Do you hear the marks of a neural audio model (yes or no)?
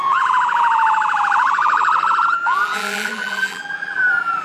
yes